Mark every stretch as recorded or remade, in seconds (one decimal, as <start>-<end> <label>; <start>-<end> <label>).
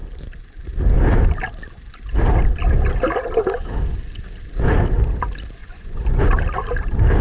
0.0-5.6 recorded; 5.6-6.2 remade; 6.2-7.2 recorded